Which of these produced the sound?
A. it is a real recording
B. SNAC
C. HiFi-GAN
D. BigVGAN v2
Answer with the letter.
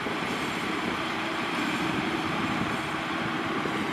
D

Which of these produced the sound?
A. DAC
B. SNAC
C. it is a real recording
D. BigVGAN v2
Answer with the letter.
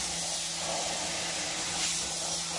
C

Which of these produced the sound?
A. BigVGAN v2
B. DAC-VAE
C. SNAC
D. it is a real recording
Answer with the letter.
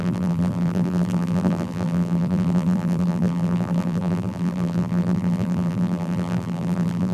A